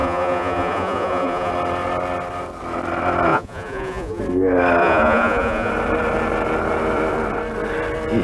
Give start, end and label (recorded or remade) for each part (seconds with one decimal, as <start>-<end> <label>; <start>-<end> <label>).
0.0-1.5 remade; 1.5-3.3 recorded; 3.3-4.2 remade; 4.2-4.8 recorded; 4.8-5.7 remade; 5.7-8.2 recorded